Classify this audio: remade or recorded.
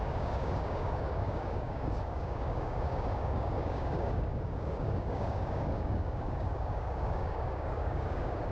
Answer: remade